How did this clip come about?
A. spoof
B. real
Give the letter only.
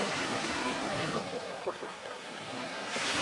A